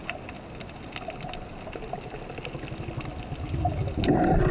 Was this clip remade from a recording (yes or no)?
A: no